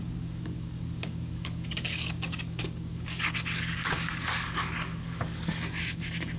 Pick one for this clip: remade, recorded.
remade